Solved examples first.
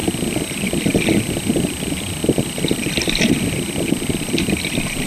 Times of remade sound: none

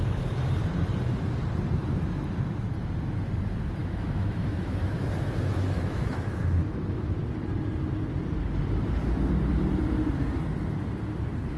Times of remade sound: 3.8-7.2 (autoencoder, DAC-VAE)

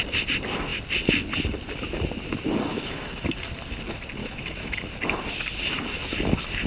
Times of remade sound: 2.7-3.3 (autoencoder, DAC-VAE); 4.2-4.9

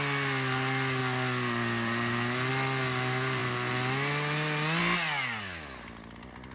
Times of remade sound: none

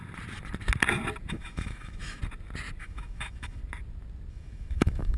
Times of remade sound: 1.3-2.2 (autoencoder, DAC-VAE); 2.8-3.6; 4.3-5.2

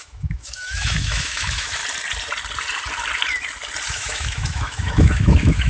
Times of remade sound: 0.0-1.8 (autoencoder, DAC-VAE); 3.9-5.7

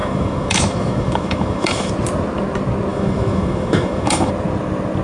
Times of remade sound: 0.0-1.9 (autoencoder, DAC-VAE); 2.9-4.3